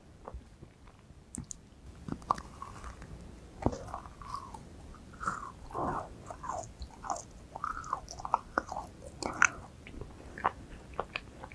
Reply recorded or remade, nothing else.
recorded